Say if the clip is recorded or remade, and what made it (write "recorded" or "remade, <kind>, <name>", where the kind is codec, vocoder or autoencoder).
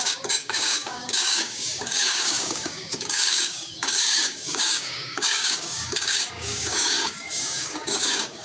remade, codec, DAC